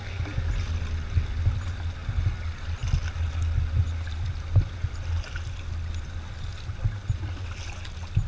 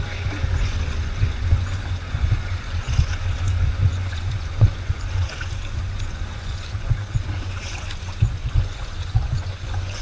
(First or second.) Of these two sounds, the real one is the first